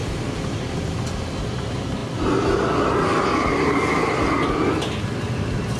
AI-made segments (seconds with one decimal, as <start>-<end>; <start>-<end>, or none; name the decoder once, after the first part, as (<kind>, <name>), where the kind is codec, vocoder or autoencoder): none